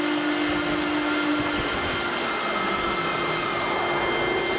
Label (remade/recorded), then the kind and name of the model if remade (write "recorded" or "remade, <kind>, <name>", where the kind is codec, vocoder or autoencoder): recorded